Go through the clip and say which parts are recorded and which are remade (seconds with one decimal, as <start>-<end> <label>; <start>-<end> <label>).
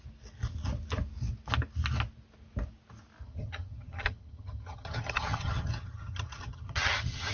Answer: 0.0-3.2 recorded; 3.2-7.3 remade